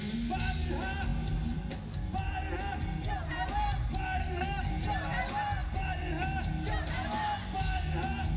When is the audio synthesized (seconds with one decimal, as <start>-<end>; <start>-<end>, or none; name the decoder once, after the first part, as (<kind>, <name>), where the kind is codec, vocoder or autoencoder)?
4.2-4.7 (codec, SNAC)